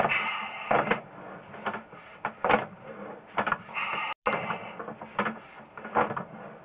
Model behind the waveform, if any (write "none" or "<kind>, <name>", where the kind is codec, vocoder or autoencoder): none